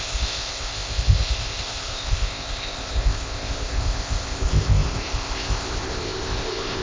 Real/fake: fake